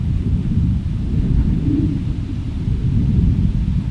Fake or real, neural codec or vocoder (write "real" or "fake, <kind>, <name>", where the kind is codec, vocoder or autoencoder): real